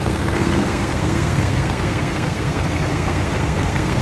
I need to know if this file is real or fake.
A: fake